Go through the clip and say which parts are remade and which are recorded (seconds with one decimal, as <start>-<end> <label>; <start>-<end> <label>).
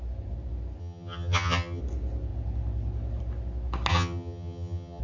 0.0-0.8 recorded; 0.8-1.8 remade; 1.8-3.9 recorded; 3.9-5.0 remade